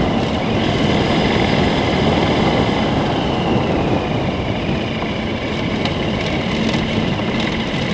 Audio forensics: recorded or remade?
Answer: recorded